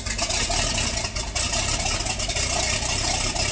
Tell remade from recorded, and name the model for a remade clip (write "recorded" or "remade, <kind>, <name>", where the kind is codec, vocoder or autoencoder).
recorded